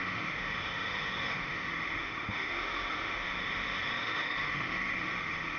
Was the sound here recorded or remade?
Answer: remade